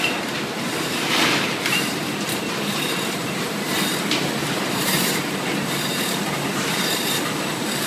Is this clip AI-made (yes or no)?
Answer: yes